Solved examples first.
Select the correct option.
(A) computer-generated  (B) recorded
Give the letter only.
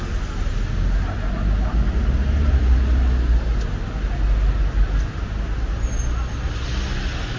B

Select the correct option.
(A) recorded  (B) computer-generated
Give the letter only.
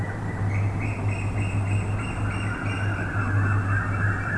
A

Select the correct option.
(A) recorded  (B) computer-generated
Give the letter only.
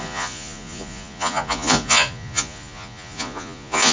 B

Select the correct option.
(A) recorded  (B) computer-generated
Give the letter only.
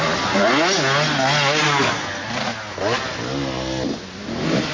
A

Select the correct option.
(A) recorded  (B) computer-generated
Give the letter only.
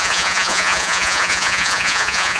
B